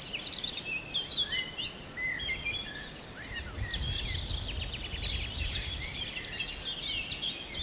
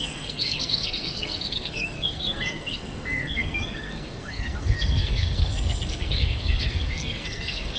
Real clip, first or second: first